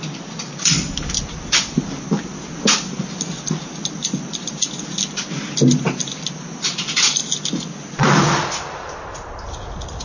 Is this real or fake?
real